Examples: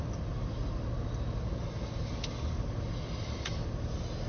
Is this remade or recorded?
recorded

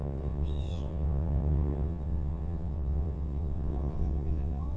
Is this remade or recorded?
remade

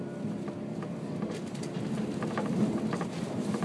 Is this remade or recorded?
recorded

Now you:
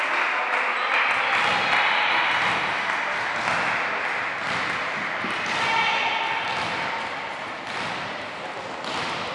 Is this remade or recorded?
recorded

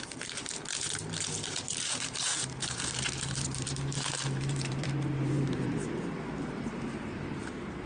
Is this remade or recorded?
remade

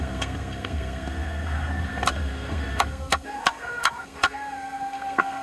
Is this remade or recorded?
remade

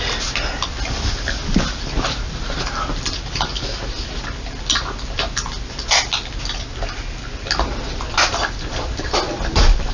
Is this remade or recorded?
recorded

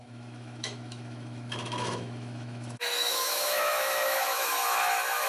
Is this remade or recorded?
remade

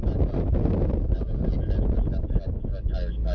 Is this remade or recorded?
recorded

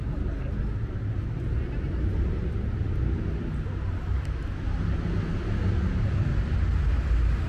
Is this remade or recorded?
recorded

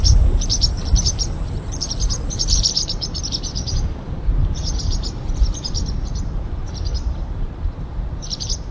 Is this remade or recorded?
remade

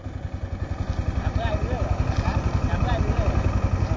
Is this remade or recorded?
recorded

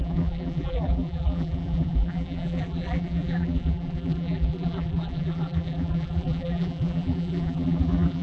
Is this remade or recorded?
remade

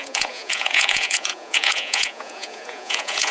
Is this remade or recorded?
remade